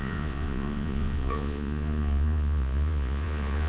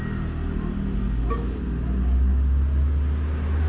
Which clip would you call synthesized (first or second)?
first